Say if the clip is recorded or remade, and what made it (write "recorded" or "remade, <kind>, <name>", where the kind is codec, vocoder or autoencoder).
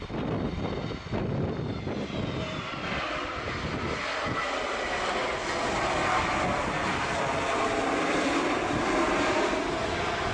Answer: recorded